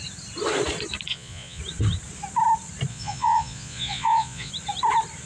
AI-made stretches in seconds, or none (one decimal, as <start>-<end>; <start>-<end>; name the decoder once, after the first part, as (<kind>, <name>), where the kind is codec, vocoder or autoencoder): 1.1-1.6 (vocoder, Vocos); 2.9-4.5

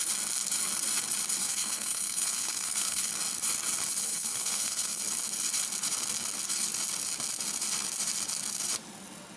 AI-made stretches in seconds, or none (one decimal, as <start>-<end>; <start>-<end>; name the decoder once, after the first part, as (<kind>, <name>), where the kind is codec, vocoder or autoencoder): 1.4-3.1 (codec, SNAC); 4.1-5.0

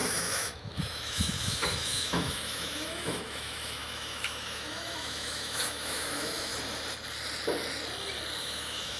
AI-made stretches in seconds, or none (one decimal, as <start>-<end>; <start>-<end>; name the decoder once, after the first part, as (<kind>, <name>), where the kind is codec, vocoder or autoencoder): 0.0-6.5 (autoencoder, DAC-VAE); 8.4-9.0

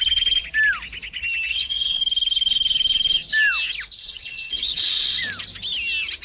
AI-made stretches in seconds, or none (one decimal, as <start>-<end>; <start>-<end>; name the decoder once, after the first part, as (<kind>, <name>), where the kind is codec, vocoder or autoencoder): 1.5-2.0 (vocoder, WaveNeXt); 4.0-5.2

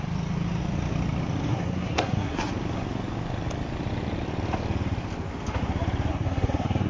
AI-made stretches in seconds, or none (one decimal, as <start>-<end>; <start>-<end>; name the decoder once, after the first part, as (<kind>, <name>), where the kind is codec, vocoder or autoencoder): 1.5-2.5 (codec, SNAC); 6.1-6.9